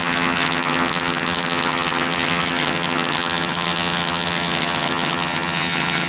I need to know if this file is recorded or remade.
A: remade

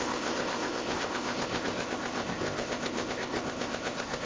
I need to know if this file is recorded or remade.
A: remade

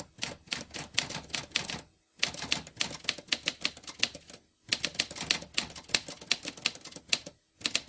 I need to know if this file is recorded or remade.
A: recorded